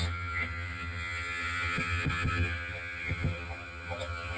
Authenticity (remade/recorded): remade